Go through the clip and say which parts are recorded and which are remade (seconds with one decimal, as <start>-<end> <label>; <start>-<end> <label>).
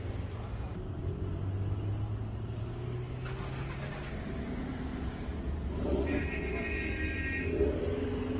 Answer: 0.0-4.9 recorded; 4.9-6.2 remade; 6.2-8.4 recorded